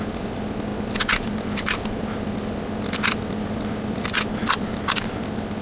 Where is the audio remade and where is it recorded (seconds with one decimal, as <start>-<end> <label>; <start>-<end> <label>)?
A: 0.0-5.6 recorded